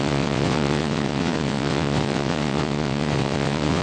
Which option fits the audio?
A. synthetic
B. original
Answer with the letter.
A